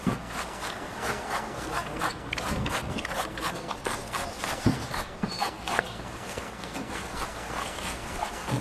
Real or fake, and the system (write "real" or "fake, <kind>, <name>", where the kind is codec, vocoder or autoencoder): fake, codec, SNAC